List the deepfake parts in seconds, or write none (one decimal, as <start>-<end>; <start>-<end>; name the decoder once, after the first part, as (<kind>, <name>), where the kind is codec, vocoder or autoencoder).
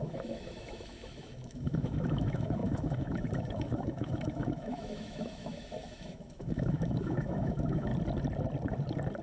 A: 0.0-7.9 (autoencoder, DAC-VAE)